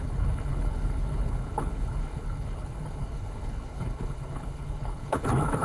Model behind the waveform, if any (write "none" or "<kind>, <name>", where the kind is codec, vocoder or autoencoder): codec, HILCodec